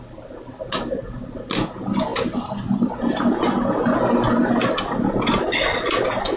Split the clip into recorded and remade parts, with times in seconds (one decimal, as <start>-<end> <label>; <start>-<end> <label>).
0.0-6.4 recorded